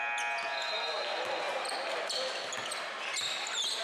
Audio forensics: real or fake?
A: real